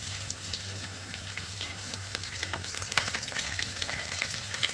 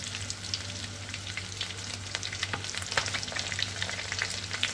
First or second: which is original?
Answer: second